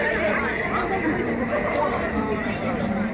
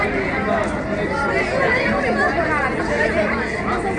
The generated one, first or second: first